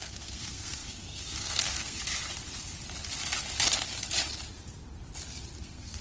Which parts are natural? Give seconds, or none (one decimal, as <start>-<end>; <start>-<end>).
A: 2.0-5.6